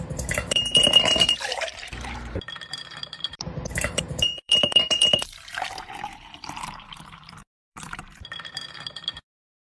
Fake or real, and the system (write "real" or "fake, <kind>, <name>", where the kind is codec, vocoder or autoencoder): fake, vocoder, BigVGAN v2